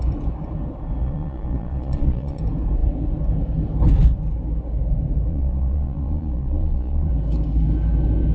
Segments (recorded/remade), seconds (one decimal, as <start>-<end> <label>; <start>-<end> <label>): 0.0-1.0 recorded; 1.0-2.4 remade; 2.4-5.3 recorded; 5.3-7.1 remade; 7.1-8.3 recorded